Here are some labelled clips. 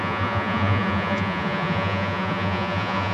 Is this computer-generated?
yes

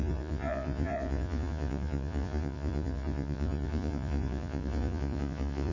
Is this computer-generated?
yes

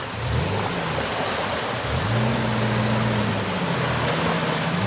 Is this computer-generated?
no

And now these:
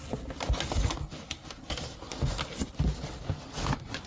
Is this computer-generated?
no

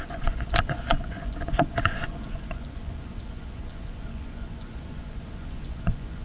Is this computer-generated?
yes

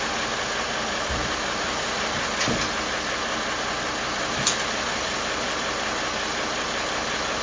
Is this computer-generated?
no